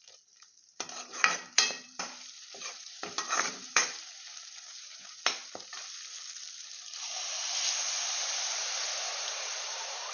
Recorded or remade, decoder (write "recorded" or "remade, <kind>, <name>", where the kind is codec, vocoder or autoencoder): remade, vocoder, BigVGAN v2